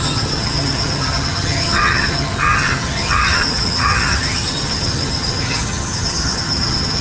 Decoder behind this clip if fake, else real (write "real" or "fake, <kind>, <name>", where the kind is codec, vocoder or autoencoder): fake, vocoder, HiFi-GAN